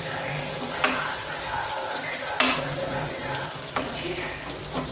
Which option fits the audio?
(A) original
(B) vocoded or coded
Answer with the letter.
A